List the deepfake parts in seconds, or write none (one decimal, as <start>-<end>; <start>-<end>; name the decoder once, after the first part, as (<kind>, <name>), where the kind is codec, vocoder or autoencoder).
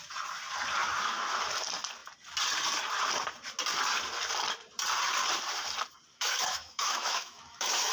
6.1-7.9 (autoencoder, DAC-VAE)